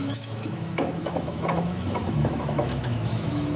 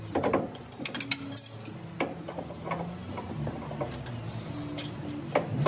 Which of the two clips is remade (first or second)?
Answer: first